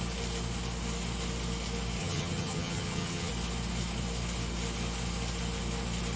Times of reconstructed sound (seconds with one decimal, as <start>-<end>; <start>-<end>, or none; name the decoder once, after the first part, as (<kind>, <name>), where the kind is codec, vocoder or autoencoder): 2.0-3.3 (vocoder, HiFi-GAN)